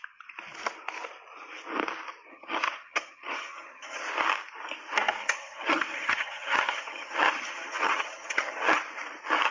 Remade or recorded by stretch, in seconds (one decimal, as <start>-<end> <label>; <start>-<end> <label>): 0.0-2.3 recorded; 2.3-4.0 remade; 4.0-5.2 recorded; 5.2-8.8 remade; 8.8-9.5 recorded

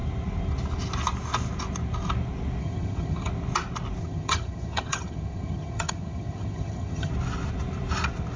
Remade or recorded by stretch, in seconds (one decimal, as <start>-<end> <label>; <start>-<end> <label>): 0.0-2.6 recorded; 2.6-3.3 remade; 3.3-4.0 recorded; 4.0-7.1 remade; 7.1-8.4 recorded

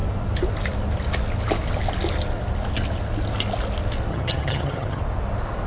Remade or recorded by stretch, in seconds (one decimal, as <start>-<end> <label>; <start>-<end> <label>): 0.0-4.1 recorded; 4.1-5.0 remade; 5.0-5.7 recorded